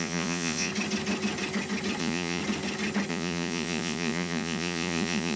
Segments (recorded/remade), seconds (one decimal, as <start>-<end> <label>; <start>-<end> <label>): 0.0-0.7 remade; 0.7-2.0 recorded; 2.0-2.4 remade; 2.4-3.1 recorded; 3.1-5.4 remade